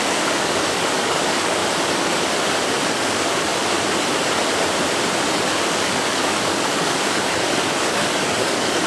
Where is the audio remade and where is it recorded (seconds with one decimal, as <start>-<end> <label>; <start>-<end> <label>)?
0.0-1.6 remade; 1.6-2.9 recorded; 2.9-3.5 remade; 3.5-5.7 recorded; 5.7-8.9 remade